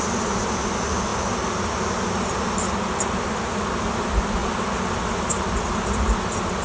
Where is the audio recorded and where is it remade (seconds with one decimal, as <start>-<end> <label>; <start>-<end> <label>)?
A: 0.0-6.6 recorded

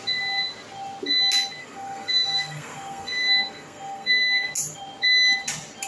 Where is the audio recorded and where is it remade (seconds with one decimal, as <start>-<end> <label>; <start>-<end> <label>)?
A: 0.0-1.6 recorded; 1.6-4.5 remade; 4.5-5.9 recorded

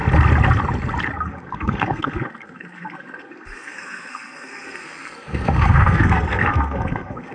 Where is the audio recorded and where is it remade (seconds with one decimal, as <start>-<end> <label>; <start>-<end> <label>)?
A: 0.0-1.3 recorded; 1.3-7.3 remade

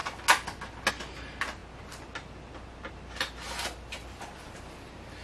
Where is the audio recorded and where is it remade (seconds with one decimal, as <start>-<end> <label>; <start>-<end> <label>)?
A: 0.0-5.2 recorded

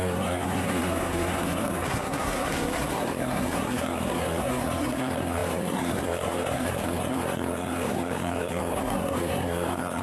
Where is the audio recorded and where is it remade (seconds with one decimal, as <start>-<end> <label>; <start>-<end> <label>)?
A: 0.0-10.0 remade